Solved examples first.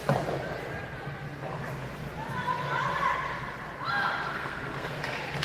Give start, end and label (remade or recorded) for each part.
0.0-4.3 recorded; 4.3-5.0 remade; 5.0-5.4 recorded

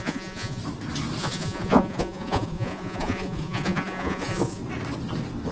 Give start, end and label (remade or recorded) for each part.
0.0-0.6 remade; 0.6-1.2 recorded; 1.2-4.6 remade; 4.6-5.5 recorded

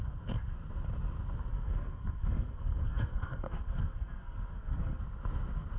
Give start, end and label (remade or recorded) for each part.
0.0-1.5 recorded; 1.5-5.0 remade; 5.0-5.8 recorded

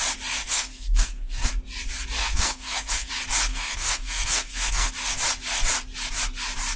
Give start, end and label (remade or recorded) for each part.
0.0-0.4 recorded; 0.4-1.5 remade; 1.5-2.2 recorded; 2.2-3.1 remade; 3.1-3.5 recorded; 3.5-4.9 remade; 4.9-6.8 recorded

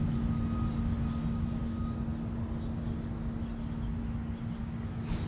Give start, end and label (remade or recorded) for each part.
0.0-4.6 recorded; 4.6-5.3 remade

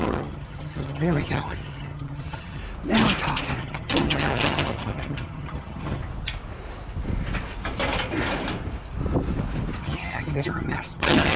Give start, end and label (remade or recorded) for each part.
0.0-2.6 remade; 2.6-3.6 recorded; 3.6-6.0 remade; 6.0-9.8 recorded; 9.8-11.4 remade

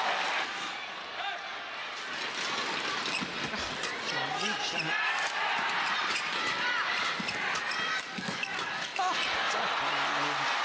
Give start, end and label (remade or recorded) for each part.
0.0-8.9 recorded; 8.9-9.7 remade; 9.7-10.6 recorded

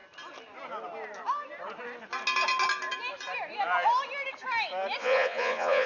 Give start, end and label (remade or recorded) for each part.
0.0-5.0 recorded; 5.0-5.9 remade